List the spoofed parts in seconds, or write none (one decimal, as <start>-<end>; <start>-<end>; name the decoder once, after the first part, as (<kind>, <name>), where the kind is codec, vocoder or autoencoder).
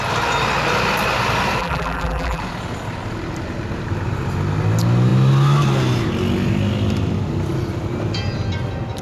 1.6-2.4 (vocoder, BigVGAN v2)